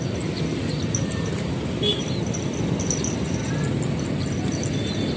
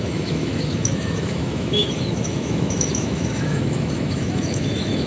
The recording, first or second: first